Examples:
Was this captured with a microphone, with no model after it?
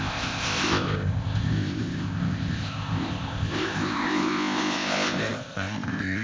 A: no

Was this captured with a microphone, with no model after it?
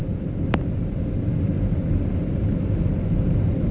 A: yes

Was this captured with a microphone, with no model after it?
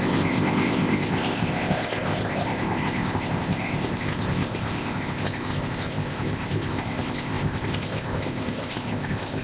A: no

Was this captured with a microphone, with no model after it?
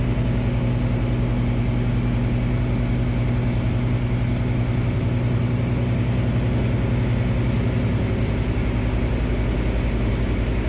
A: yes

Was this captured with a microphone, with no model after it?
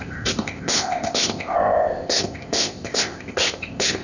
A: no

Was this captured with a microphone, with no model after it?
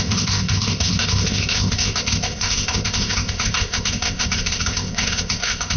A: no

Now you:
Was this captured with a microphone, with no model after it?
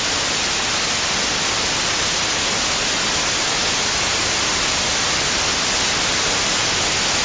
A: yes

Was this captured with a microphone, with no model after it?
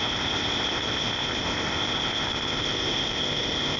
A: no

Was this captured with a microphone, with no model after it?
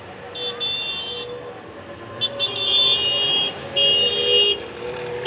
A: yes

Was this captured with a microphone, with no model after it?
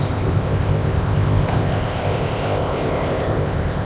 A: no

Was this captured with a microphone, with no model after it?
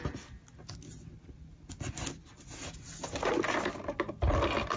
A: yes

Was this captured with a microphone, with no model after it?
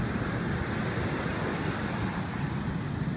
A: yes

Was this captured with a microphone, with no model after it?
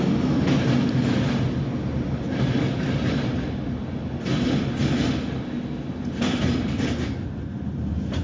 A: yes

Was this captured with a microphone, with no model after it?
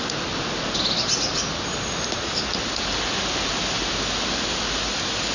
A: yes